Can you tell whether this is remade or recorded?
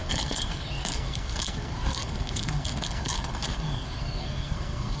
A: remade